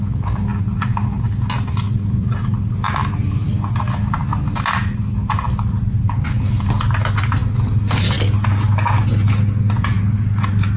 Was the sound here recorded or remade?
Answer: recorded